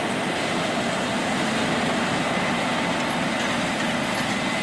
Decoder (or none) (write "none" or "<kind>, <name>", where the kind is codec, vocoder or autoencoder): none